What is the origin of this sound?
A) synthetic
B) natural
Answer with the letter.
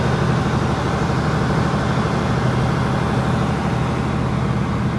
B